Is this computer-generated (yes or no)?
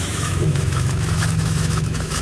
yes